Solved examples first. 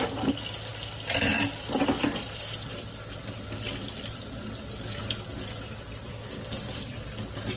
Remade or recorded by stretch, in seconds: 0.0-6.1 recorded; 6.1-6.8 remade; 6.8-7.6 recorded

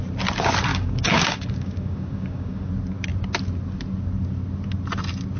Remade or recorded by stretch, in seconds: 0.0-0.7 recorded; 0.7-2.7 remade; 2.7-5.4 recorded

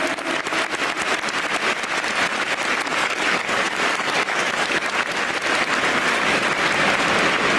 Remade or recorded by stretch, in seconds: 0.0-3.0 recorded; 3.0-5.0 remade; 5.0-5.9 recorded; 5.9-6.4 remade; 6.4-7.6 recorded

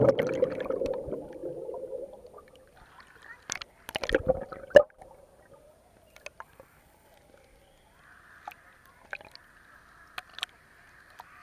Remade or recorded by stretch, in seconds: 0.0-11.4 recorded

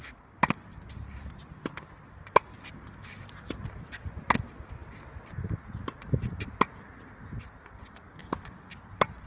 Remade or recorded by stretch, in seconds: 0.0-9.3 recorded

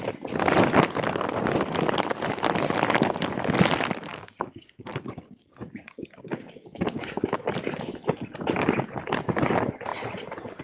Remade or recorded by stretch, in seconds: 0.0-4.1 recorded; 4.1-7.4 remade; 7.4-10.6 recorded

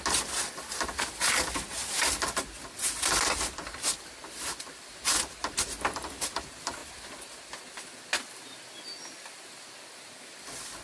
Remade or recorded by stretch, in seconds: 0.0-10.8 recorded

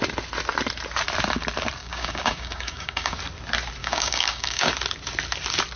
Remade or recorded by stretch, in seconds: 0.0-1.8 recorded; 1.8-3.2 remade; 3.2-3.8 recorded; 3.8-4.7 remade; 4.7-5.8 recorded